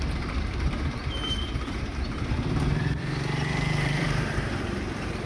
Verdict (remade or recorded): remade